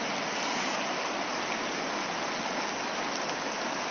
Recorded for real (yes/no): yes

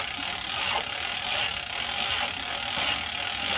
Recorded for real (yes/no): yes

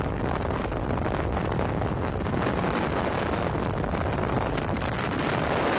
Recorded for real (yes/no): yes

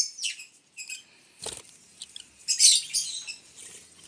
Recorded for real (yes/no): yes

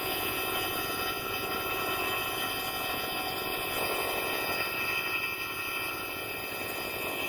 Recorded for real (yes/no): no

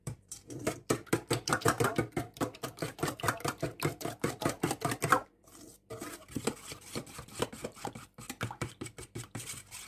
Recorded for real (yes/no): no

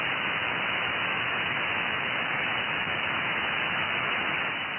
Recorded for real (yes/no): no